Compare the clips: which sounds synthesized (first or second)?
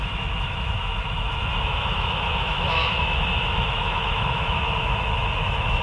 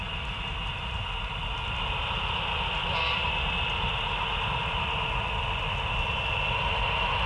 first